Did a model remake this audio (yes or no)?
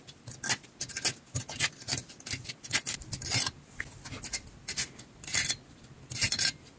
no